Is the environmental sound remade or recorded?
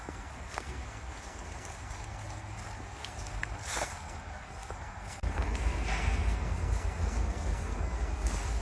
remade